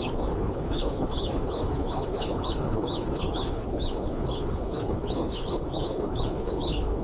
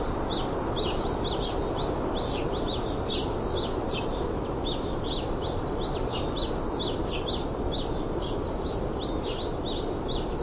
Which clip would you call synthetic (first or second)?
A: first